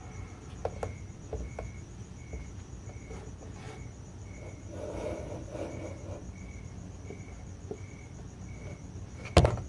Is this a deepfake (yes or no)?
no